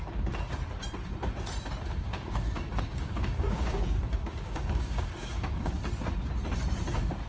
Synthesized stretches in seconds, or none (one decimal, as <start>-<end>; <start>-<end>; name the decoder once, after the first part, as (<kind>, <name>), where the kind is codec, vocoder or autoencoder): 2.1-5.7 (codec, DAC)